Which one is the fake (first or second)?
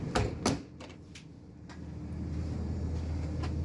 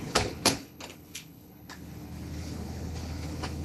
second